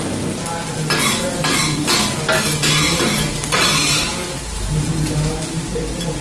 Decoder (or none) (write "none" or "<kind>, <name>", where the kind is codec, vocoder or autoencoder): none